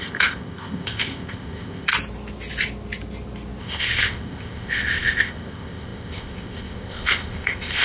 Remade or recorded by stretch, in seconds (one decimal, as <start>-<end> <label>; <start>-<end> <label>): 0.0-1.9 remade; 1.9-3.6 recorded; 3.6-7.8 remade